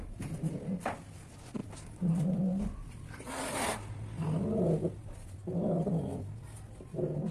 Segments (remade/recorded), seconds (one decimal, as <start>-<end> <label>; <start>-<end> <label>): 0.0-7.3 recorded